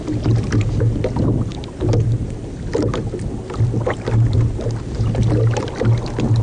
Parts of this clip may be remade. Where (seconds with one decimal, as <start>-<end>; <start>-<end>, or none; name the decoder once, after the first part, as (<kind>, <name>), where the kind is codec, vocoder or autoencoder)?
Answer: none